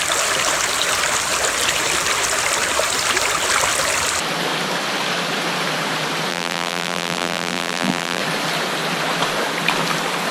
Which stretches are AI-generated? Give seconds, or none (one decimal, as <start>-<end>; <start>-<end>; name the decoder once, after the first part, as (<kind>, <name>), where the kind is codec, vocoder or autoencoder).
6.3-8.2 (vocoder, BigVGAN v2)